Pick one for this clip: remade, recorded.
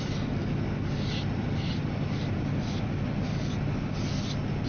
recorded